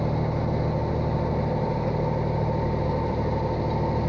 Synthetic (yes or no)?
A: no